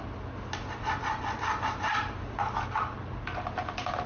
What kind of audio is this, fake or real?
real